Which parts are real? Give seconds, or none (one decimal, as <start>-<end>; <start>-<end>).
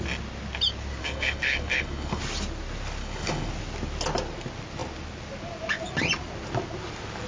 0.0-1.0; 2.2-3.0; 3.5-7.3